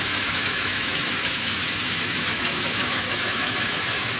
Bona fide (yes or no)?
no